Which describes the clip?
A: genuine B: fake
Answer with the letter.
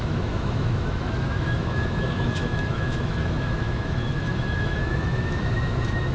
B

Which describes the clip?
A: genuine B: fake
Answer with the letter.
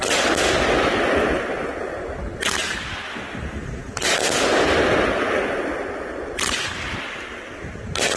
A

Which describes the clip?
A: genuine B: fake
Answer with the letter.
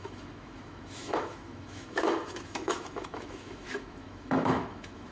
B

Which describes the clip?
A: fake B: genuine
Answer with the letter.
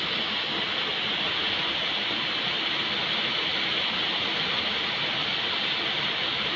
B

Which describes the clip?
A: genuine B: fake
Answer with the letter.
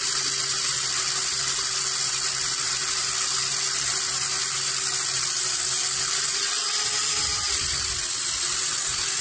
A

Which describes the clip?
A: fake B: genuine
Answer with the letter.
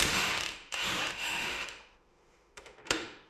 A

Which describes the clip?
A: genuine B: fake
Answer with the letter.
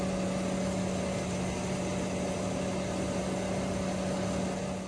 A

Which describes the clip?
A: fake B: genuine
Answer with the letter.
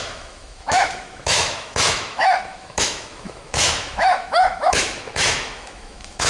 A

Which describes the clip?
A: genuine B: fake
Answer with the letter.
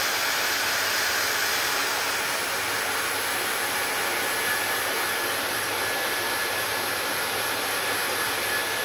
A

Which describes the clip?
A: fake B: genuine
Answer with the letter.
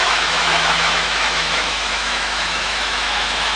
A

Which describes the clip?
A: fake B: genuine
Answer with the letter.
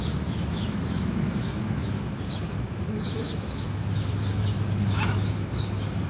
A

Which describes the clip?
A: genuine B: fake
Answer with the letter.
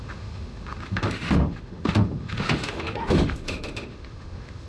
B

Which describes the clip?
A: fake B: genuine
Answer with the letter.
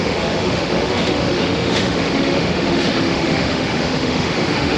A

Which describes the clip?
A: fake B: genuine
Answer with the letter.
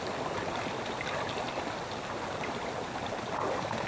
B